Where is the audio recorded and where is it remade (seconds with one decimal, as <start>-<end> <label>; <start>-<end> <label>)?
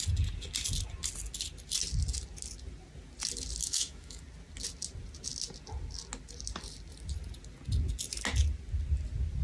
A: 0.0-3.6 recorded; 3.6-4.2 remade; 4.2-9.4 recorded